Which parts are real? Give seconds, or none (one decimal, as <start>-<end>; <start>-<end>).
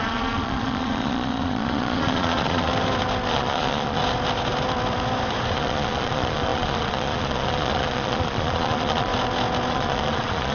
2.7-3.3; 4.0-5.5; 9.1-9.7